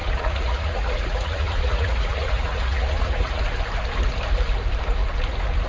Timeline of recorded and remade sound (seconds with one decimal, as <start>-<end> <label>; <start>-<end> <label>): 0.0-3.4 remade; 3.4-5.7 recorded